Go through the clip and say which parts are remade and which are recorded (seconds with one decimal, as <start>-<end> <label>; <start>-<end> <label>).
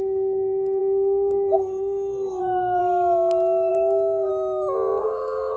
0.0-2.8 remade; 2.8-3.7 recorded; 3.7-4.3 remade; 4.3-5.0 recorded; 5.0-5.6 remade